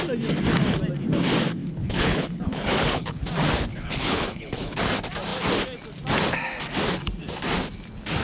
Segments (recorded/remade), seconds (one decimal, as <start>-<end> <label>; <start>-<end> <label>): 0.0-1.6 recorded; 1.6-3.2 remade; 3.2-3.7 recorded; 3.7-4.8 remade; 4.8-8.2 recorded